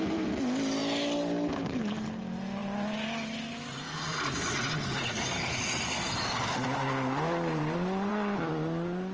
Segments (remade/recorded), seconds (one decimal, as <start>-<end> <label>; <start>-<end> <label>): 0.0-9.1 recorded